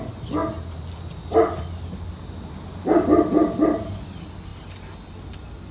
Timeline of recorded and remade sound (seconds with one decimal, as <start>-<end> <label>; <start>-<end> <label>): 0.0-5.7 recorded